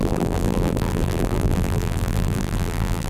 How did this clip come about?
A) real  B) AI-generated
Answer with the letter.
B